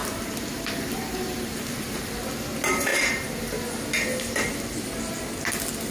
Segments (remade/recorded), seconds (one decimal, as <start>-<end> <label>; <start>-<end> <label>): 0.0-2.1 remade; 2.1-2.9 recorded; 2.9-3.4 remade; 3.4-5.9 recorded